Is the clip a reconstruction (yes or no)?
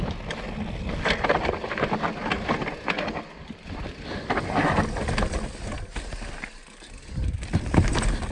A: no